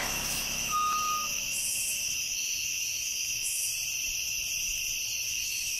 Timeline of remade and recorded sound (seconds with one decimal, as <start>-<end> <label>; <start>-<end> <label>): 0.0-3.7 remade; 3.7-5.3 recorded; 5.3-5.8 remade

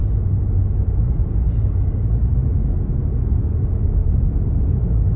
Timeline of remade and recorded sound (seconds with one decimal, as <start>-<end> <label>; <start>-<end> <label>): 0.0-5.2 recorded

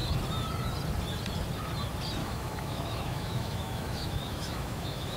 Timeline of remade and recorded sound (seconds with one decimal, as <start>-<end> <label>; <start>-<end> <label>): 0.0-2.2 recorded; 2.2-5.2 remade

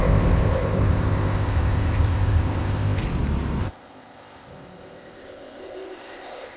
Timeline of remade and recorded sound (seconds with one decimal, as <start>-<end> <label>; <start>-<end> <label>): 0.0-3.0 remade; 3.0-3.6 recorded; 3.6-6.6 remade

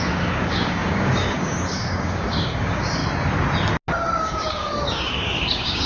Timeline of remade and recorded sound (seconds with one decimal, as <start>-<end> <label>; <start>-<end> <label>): 0.0-3.0 remade; 3.0-4.2 recorded; 4.2-5.9 remade